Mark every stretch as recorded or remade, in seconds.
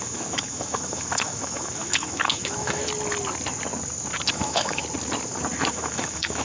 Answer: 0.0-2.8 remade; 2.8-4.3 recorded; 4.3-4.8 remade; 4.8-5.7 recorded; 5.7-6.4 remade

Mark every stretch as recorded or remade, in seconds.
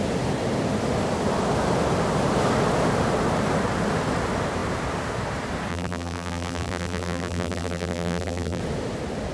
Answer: 0.0-5.7 recorded; 5.7-8.6 remade; 8.6-9.3 recorded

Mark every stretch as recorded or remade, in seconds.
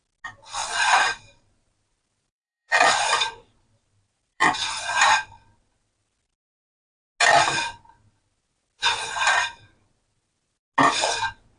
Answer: 0.0-0.6 recorded; 0.6-4.9 remade; 4.9-11.6 recorded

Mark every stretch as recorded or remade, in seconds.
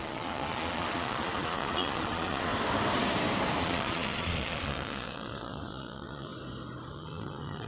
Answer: 0.0-2.5 remade; 2.5-3.6 recorded; 3.6-6.3 remade; 6.3-6.9 recorded; 6.9-7.7 remade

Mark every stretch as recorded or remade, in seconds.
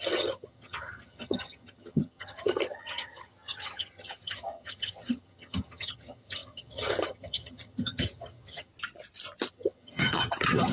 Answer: 0.0-8.7 remade; 8.7-9.5 recorded; 9.5-10.7 remade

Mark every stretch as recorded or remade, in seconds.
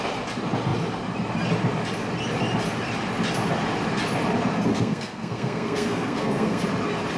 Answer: 0.0-4.7 recorded; 4.7-6.6 remade; 6.6-7.2 recorded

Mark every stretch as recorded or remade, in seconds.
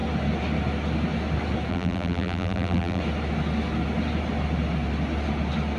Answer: 0.0-1.7 recorded; 1.7-3.0 remade; 3.0-5.8 recorded